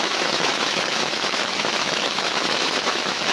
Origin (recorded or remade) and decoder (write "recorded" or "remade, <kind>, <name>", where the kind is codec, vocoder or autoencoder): remade, autoencoder, DAC-VAE